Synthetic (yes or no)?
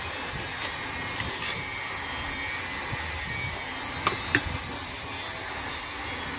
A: no